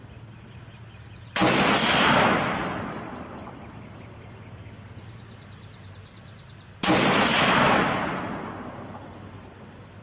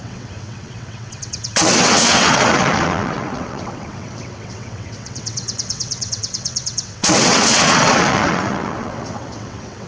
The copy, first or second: second